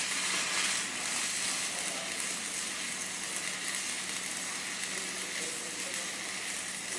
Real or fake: real